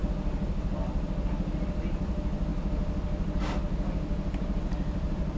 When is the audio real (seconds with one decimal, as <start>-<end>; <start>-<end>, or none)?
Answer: 0.0-5.4